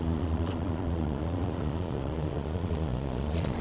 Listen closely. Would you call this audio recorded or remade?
remade